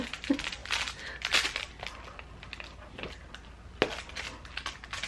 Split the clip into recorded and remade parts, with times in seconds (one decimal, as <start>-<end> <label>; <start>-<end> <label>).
0.0-5.1 recorded